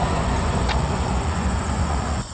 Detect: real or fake fake